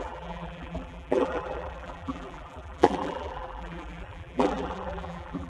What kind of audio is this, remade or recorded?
remade